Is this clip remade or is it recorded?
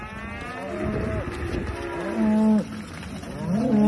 recorded